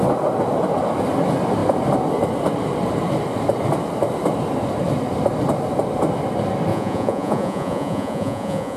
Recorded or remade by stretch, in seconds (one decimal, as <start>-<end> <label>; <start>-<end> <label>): 0.0-6.7 recorded; 6.7-8.8 remade